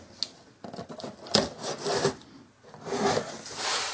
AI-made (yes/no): no